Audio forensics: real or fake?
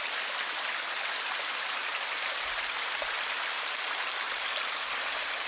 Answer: real